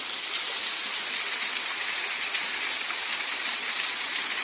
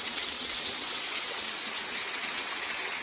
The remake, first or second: second